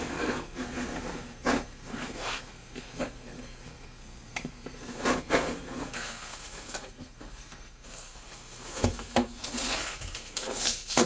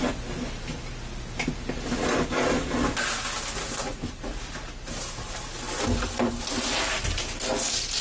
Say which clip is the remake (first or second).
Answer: first